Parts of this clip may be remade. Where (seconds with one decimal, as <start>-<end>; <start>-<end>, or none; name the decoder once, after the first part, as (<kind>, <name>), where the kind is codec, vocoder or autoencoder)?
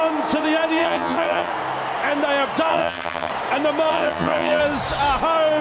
0.8-1.5 (vocoder, HiFi-GAN); 2.7-3.3; 3.9-4.6